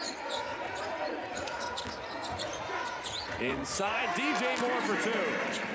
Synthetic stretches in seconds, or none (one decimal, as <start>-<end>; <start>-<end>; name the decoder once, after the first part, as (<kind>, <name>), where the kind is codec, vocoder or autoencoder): 0.5-1.6 (vocoder, Vocos); 2.2-4.0